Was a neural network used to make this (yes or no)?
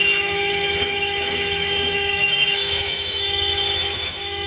yes